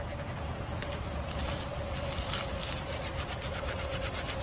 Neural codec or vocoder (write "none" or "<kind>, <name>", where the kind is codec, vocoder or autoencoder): none